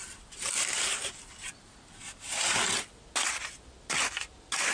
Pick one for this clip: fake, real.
real